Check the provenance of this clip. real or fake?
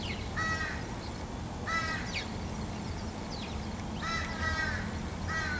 real